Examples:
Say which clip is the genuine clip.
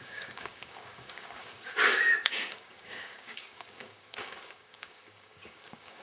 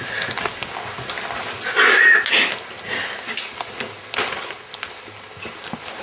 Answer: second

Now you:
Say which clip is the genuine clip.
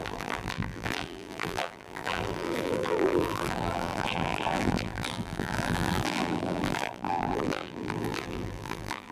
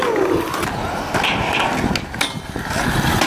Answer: second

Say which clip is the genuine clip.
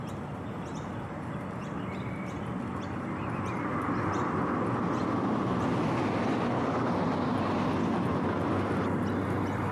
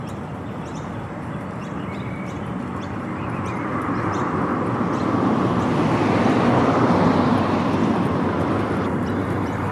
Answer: first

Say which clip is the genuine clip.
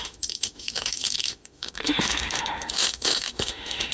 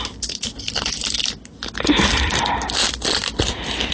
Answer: second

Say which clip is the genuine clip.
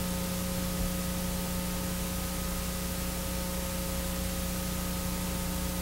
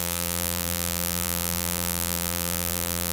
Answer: first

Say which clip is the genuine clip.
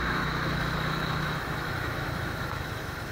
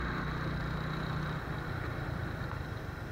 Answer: second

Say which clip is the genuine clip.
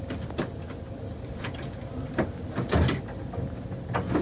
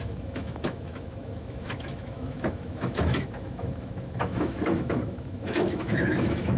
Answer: first